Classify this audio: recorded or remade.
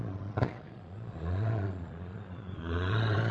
remade